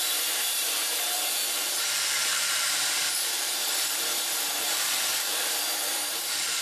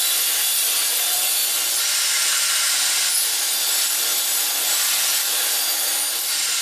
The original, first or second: second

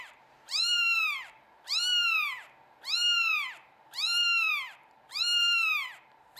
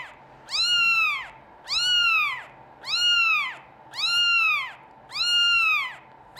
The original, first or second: second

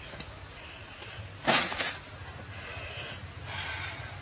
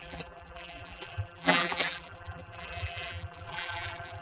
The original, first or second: first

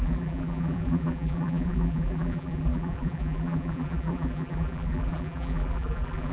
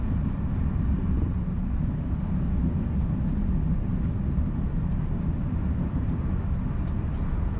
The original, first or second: second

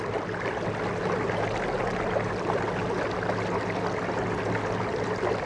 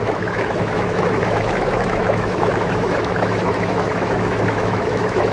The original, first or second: first